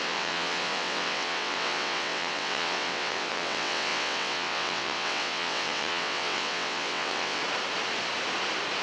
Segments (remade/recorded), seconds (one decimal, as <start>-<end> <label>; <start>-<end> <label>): 0.0-7.4 remade; 7.4-8.8 recorded